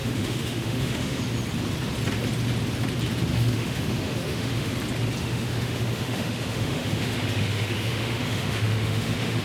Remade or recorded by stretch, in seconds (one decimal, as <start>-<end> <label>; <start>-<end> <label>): 0.0-1.2 remade; 1.2-3.3 recorded; 3.3-4.7 remade; 4.7-5.2 recorded; 5.2-9.4 remade